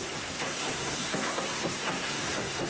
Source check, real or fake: fake